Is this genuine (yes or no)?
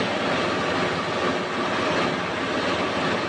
yes